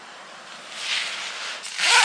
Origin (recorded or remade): recorded